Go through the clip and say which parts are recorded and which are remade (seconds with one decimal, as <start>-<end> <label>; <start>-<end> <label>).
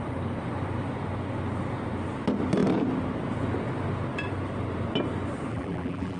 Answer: 0.0-5.5 recorded; 5.5-6.2 remade